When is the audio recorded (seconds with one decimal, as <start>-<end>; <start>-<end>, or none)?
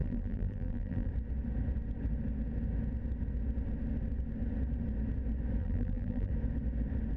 1.1-5.6; 6.3-7.2